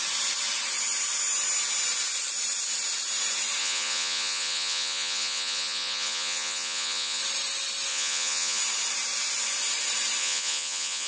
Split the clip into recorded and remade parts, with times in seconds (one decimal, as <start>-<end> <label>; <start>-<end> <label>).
0.0-3.6 recorded; 3.6-7.2 remade; 7.2-7.9 recorded; 7.9-8.6 remade; 8.6-10.2 recorded; 10.2-11.1 remade